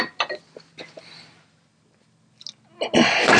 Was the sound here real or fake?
real